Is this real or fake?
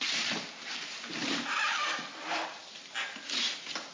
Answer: real